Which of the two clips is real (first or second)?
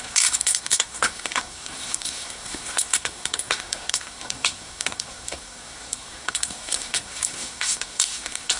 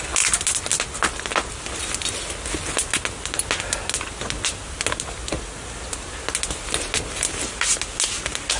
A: second